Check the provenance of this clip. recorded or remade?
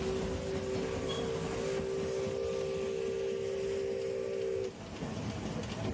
recorded